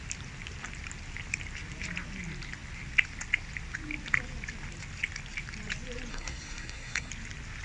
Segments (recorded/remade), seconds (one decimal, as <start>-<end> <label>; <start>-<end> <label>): 0.0-6.1 recorded; 6.1-7.1 remade; 7.1-7.6 recorded